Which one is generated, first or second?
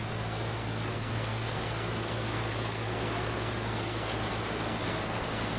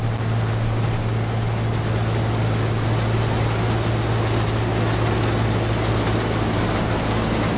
first